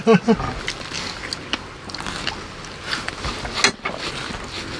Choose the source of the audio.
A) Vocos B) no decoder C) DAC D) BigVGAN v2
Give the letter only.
B